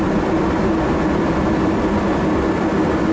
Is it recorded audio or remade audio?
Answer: recorded